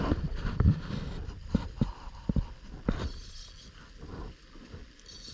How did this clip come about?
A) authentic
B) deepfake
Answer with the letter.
A